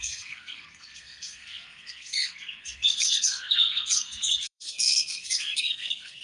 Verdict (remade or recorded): remade